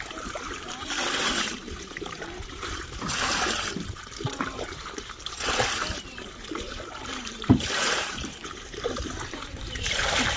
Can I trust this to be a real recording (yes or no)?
no